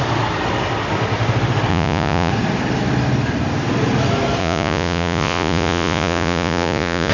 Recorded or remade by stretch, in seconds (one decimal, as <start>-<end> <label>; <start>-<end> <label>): 0.0-1.7 recorded; 1.7-2.3 remade; 2.3-4.4 recorded; 4.4-7.1 remade